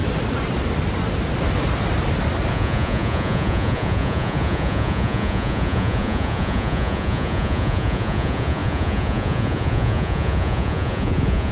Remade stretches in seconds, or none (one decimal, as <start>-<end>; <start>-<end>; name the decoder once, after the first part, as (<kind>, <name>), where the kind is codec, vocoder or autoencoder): 2.5-11.5 (vocoder, Vocos)